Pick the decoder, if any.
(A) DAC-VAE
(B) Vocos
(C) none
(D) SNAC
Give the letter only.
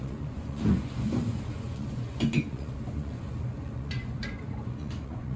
B